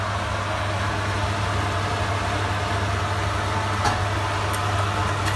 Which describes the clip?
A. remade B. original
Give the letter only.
B